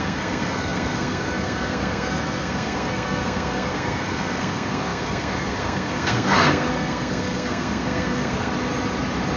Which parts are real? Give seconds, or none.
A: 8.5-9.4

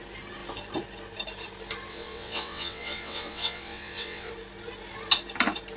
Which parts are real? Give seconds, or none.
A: 0.0-1.9; 4.3-5.8

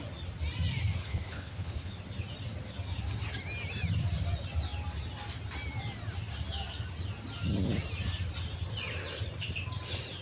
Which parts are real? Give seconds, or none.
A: 0.0-1.0; 1.9-10.2